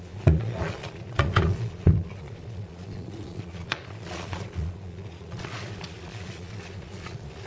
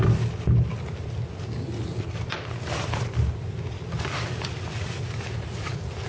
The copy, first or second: first